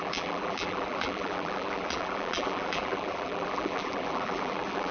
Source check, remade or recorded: remade